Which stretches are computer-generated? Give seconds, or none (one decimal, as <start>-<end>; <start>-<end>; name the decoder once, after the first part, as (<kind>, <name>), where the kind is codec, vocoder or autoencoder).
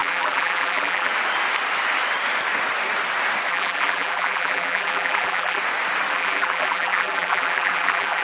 0.0-1.1 (vocoder, BigVGAN v2); 3.5-5.6; 6.1-8.2